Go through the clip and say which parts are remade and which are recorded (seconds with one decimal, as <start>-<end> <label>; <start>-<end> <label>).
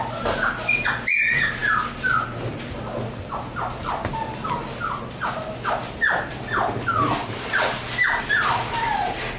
0.0-9.4 recorded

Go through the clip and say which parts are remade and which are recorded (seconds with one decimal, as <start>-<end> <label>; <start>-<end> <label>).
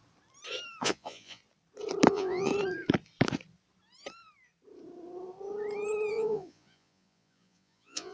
0.0-0.8 recorded; 0.8-1.4 remade; 1.4-2.1 recorded; 2.1-2.5 remade; 2.5-6.1 recorded; 6.1-8.1 remade